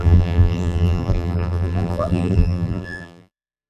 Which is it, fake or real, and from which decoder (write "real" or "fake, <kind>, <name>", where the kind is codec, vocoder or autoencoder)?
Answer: fake, vocoder, BigVGAN v2